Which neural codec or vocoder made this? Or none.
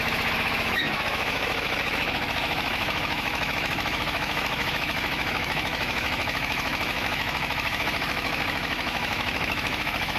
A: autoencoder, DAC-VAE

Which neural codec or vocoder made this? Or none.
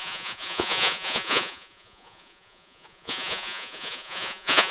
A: vocoder, Vocos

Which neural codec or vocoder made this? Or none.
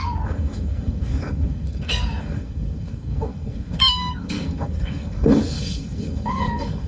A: codec, SNAC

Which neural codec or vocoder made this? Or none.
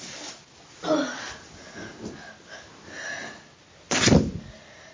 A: none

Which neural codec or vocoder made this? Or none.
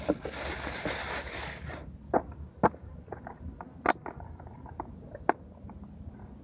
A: none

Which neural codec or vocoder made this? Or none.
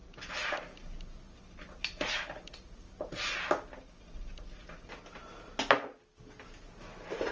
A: none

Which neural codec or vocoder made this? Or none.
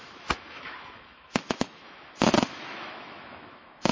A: autoencoder, DAC-VAE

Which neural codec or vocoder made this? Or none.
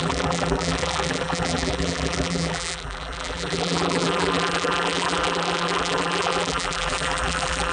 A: vocoder, BigVGAN v2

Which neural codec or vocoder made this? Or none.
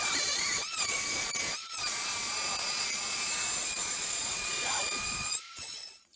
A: vocoder, Vocos